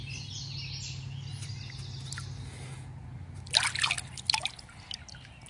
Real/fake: real